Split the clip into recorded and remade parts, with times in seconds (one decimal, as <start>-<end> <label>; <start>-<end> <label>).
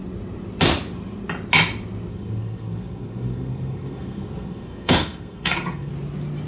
0.0-2.1 recorded; 2.1-5.9 remade; 5.9-6.5 recorded